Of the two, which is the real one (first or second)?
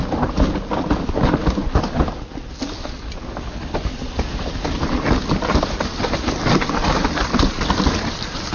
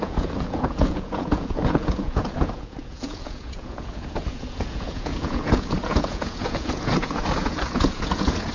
first